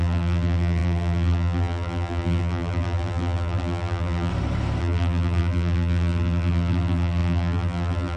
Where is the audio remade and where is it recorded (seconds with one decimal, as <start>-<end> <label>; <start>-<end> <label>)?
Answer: 0.0-4.3 remade; 4.3-4.8 recorded; 4.8-8.2 remade